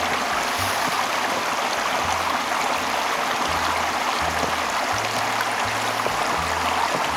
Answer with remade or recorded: recorded